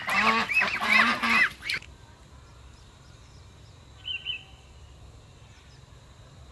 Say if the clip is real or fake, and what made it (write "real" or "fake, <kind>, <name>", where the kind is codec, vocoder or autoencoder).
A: real